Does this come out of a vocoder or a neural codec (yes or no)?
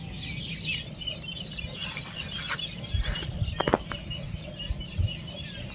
no